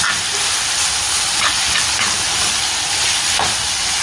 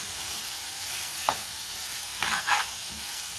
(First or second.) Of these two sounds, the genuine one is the first